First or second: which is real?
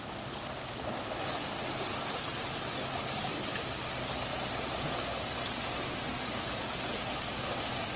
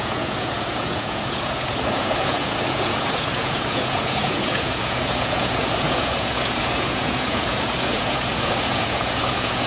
first